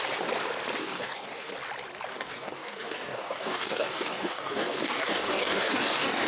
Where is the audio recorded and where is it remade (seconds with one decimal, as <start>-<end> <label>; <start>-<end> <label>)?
0.0-0.8 recorded; 0.8-1.5 remade; 1.5-2.1 recorded; 2.1-6.3 remade